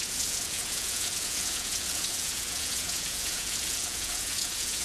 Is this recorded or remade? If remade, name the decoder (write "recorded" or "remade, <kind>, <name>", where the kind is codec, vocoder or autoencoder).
remade, vocoder, Vocos